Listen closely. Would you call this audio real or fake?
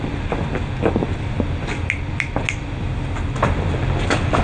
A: real